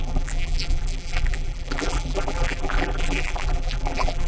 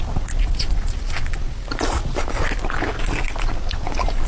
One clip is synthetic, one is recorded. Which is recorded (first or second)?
second